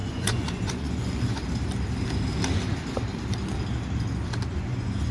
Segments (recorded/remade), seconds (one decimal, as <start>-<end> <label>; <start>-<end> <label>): 0.0-1.4 remade; 1.4-4.5 recorded; 4.5-5.1 remade